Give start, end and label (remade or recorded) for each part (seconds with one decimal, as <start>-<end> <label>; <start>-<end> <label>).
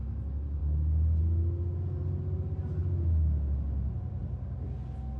0.0-5.2 recorded